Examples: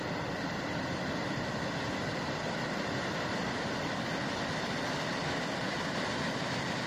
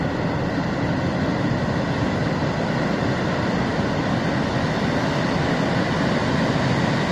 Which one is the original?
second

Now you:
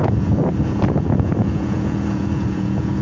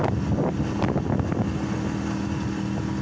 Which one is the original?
second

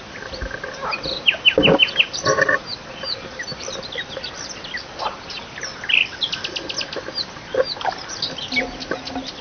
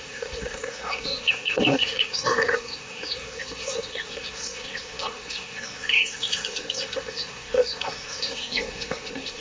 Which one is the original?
first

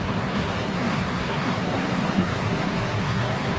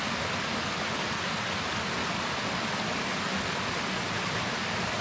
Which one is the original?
second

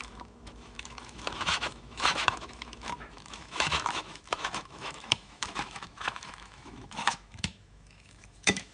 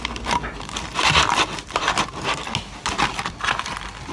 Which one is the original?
second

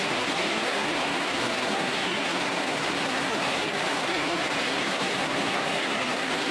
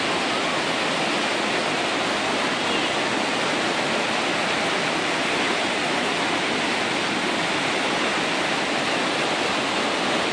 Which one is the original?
second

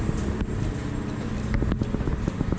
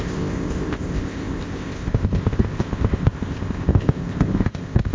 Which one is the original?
first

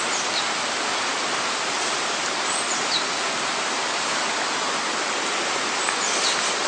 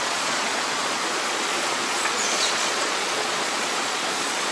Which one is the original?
first